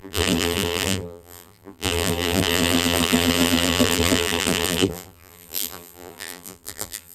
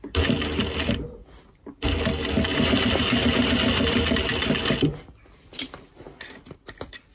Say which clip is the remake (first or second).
first